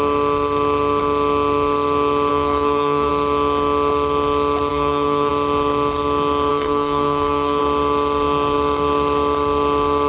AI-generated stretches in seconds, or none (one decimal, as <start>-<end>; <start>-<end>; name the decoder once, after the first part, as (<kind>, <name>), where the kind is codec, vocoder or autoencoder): 2.3-3.1 (codec, SNAC); 4.7-5.3; 6.5-7.6